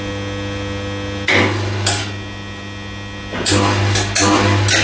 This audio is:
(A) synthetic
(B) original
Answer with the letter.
B